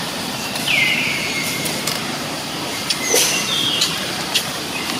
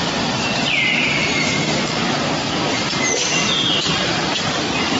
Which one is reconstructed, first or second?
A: first